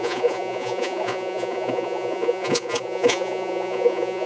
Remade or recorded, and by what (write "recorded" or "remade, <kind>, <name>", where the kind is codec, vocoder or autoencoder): remade, vocoder, Vocos